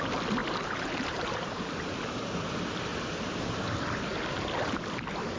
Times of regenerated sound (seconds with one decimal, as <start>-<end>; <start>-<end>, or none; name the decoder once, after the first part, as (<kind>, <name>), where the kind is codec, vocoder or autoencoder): 0.4-1.9 (vocoder, BigVGAN v2)